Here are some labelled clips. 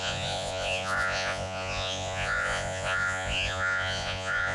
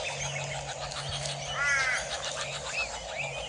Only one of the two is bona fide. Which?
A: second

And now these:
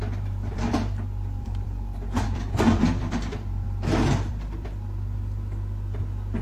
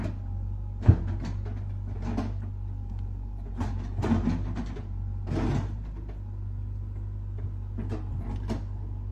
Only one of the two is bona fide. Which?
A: second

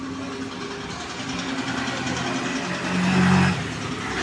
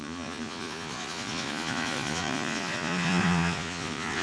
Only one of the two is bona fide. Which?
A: first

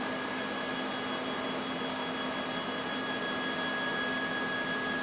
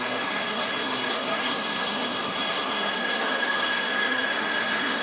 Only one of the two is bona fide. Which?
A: first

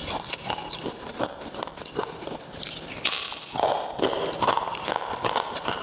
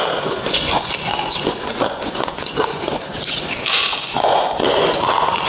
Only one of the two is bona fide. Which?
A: first